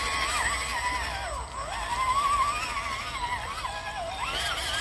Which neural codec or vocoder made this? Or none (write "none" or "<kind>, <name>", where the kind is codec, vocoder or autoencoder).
none